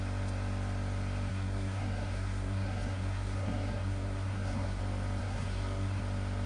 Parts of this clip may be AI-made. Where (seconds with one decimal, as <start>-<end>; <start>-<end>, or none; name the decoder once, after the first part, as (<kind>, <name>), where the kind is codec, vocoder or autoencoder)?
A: 1.3-4.8 (codec, SNAC); 5.2-6.0